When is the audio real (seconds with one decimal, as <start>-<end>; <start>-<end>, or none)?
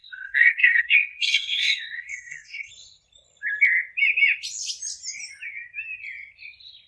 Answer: 2.7-6.9